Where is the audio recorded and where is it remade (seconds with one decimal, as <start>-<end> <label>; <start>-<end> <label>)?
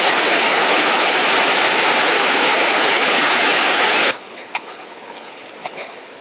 0.0-1.2 remade; 1.2-2.1 recorded; 2.1-6.2 remade